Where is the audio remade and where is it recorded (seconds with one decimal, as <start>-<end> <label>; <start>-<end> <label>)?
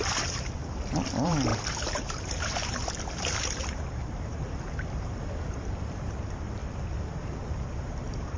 0.0-6.6 remade; 6.6-7.1 recorded; 7.1-8.4 remade